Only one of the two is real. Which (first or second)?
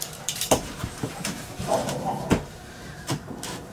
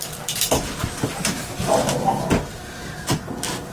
second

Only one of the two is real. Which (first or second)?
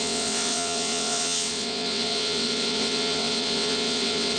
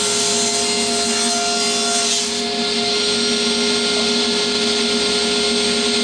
second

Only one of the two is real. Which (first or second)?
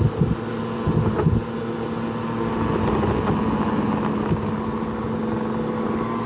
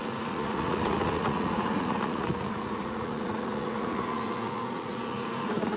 first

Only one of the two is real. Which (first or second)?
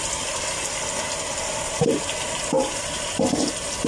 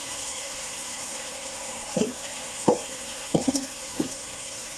first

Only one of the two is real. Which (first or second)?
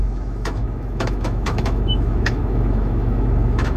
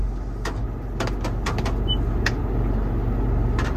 second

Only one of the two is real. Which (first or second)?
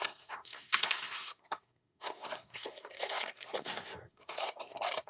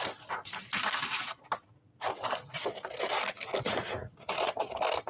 second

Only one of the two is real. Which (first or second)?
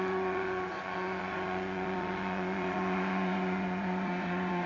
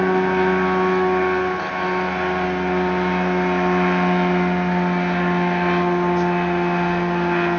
second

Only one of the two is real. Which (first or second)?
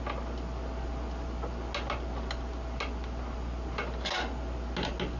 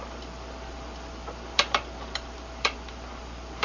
first